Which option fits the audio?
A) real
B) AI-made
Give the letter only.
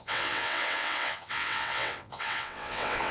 B